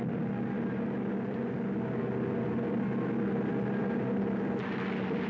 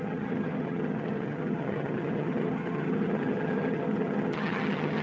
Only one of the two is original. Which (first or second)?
first